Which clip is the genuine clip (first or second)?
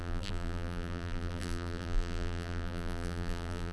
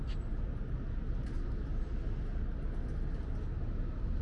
second